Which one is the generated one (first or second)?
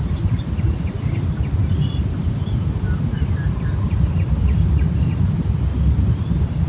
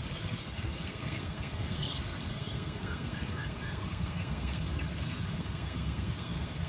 second